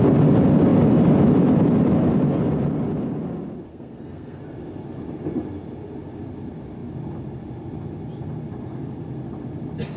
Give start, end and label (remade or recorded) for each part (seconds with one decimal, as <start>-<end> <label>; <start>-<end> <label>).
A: 0.0-3.7 recorded; 3.7-4.4 remade; 4.4-10.0 recorded